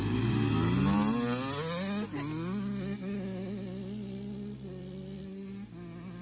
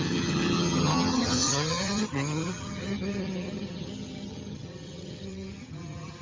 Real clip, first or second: first